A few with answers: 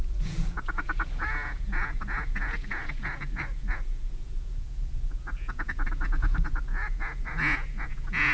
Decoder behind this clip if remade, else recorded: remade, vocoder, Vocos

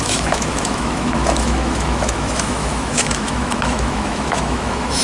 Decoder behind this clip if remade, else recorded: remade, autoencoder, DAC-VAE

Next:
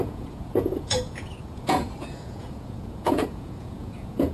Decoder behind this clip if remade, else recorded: remade, vocoder, Vocos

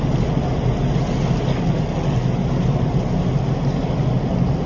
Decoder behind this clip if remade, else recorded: recorded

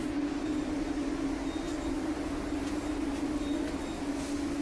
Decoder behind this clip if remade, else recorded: recorded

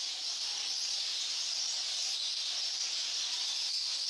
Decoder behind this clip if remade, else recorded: recorded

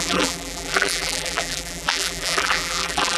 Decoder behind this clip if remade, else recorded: remade, vocoder, BigVGAN v2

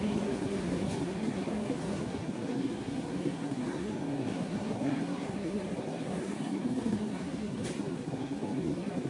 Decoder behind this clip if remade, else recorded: remade, codec, SNAC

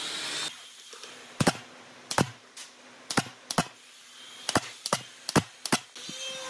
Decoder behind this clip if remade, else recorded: recorded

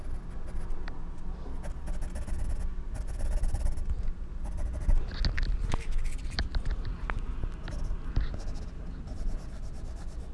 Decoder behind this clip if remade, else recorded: recorded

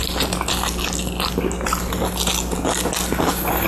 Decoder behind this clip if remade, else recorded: recorded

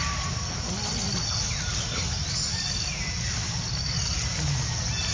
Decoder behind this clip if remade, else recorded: recorded